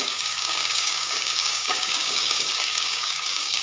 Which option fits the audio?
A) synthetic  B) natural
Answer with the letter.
A